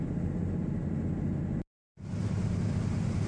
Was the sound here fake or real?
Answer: real